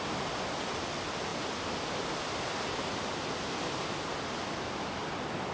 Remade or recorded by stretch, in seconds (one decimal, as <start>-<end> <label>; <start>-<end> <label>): 0.0-5.5 recorded